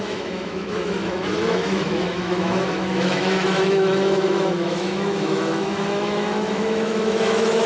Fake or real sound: fake